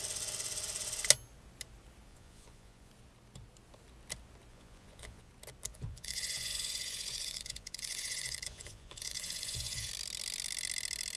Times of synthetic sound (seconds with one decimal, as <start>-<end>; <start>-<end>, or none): 2.1-2.9; 4.5-5.3; 5.7-9.9

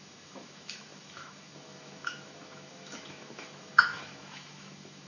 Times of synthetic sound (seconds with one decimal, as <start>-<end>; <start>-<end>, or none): 0.0-5.1

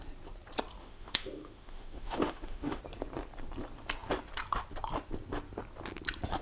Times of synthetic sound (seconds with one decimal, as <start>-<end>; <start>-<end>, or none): 0.8-2.8

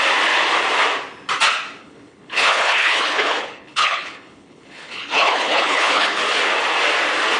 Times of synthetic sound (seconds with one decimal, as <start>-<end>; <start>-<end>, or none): 1.8-6.2

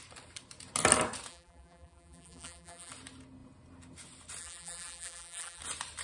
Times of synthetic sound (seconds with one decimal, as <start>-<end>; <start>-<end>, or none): 1.3-2.9; 4.4-5.6